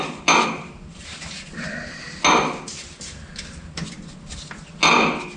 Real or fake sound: real